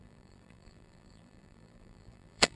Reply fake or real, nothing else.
fake